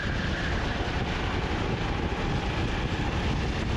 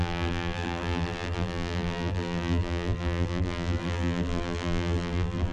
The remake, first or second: second